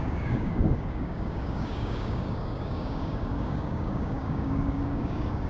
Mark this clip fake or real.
fake